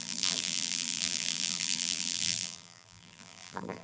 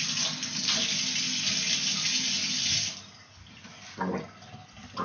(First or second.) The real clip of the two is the second